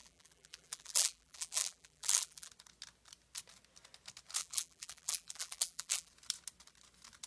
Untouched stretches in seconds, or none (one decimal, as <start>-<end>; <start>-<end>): 2.5-4.4; 6.1-7.3

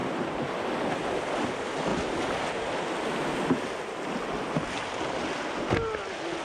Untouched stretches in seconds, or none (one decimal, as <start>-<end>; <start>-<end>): 0.0-6.4

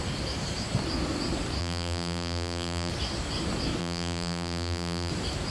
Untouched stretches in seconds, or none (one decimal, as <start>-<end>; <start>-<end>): 0.0-1.6; 2.9-3.8; 5.1-5.5

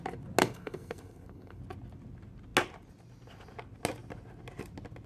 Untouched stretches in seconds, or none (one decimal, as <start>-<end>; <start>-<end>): 0.0-0.4; 1.6-5.1

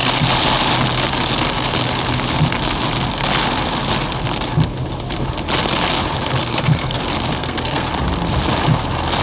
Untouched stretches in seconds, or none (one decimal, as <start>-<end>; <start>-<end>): 0.0-6.4; 7.0-7.4; 7.9-9.2